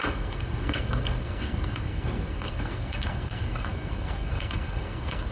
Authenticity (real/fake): fake